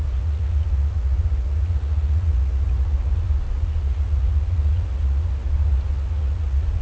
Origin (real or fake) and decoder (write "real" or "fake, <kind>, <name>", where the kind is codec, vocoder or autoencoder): fake, vocoder, Vocos